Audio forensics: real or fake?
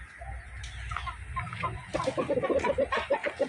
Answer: real